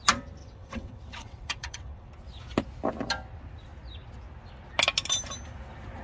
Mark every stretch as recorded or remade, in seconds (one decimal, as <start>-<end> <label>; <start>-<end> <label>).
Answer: 0.0-0.4 recorded; 0.4-2.1 remade; 2.1-6.0 recorded